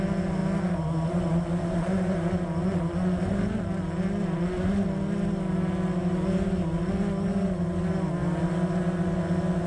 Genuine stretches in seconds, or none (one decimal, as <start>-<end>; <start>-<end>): 0.0-9.7